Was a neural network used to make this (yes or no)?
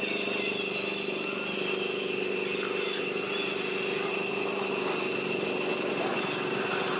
no